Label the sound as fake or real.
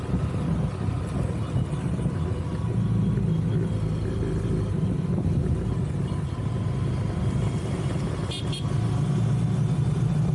real